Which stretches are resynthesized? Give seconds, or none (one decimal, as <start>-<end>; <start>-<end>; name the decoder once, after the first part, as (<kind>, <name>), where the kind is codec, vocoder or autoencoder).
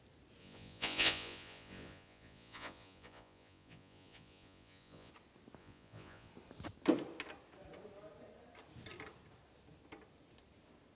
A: 0.4-5.1 (vocoder, Vocos); 5.6-6.3